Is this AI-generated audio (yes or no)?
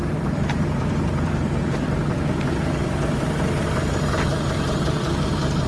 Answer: yes